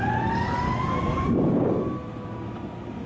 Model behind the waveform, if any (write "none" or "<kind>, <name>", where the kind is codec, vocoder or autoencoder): none